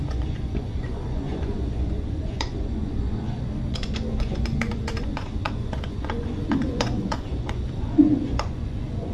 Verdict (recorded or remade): remade